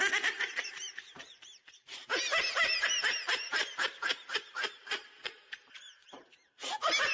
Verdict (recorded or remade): remade